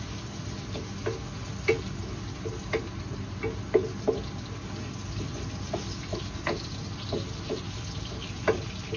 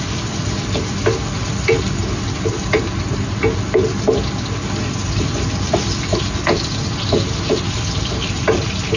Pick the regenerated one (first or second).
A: second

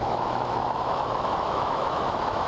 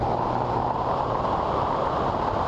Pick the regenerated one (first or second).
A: first